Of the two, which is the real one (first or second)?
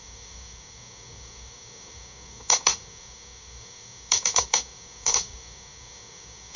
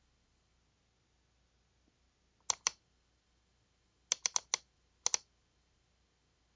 second